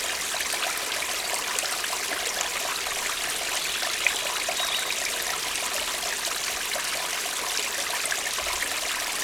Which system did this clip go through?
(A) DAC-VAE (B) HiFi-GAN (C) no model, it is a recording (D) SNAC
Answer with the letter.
C